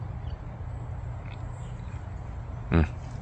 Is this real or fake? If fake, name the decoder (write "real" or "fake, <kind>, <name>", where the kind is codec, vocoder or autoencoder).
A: real